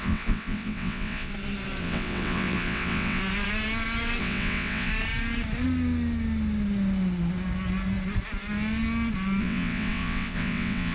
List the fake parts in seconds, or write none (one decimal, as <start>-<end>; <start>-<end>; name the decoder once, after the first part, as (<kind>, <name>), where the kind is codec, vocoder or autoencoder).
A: 0.0-1.3 (vocoder, WaveNeXt); 1.8-3.2; 4.2-4.9; 9.4-10.9